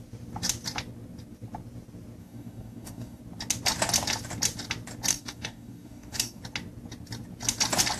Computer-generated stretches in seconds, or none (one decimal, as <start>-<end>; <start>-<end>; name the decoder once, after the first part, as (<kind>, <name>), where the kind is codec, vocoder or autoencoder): 2.2-3.2 (codec, DAC); 5.1-6.4